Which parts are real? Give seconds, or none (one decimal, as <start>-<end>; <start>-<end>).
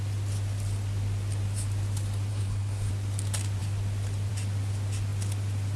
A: 0.0-2.3; 2.9-5.8